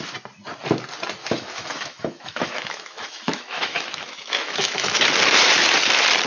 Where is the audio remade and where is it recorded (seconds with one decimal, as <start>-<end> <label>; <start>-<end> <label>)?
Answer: 0.0-1.2 recorded; 1.2-5.0 remade; 5.0-6.3 recorded